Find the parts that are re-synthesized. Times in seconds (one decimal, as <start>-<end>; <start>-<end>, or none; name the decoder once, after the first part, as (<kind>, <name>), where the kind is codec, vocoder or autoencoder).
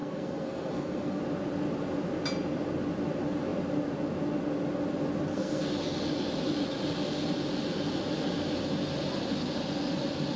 0.0-1.2 (codec, SNAC); 5.3-5.8